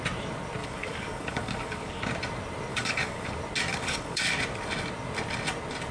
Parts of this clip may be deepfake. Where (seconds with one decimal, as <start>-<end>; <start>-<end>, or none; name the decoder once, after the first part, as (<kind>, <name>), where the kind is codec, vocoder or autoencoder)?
0.6-2.0 (codec, DAC); 2.7-3.3; 3.7-4.3